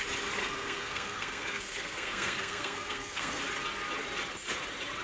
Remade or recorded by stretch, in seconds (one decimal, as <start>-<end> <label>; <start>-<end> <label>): 0.0-0.4 recorded; 0.4-3.4 remade; 3.4-5.0 recorded